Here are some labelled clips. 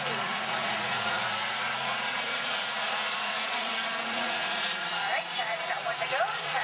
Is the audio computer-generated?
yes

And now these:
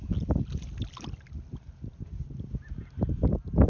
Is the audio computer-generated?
no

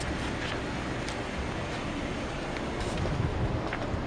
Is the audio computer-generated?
no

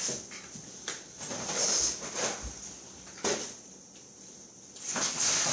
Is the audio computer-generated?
no